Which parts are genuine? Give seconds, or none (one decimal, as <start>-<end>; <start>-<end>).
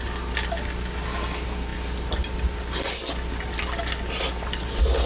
0.0-5.1